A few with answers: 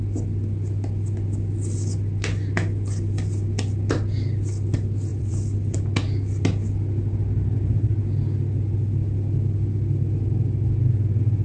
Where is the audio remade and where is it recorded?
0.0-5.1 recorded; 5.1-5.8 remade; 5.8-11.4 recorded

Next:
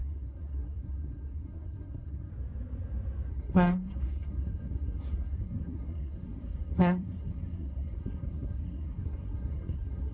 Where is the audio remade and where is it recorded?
0.0-2.3 remade; 2.3-3.3 recorded; 3.3-10.1 remade

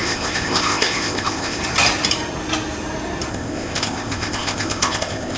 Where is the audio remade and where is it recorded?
0.0-1.6 remade; 1.6-3.3 recorded; 3.3-5.4 remade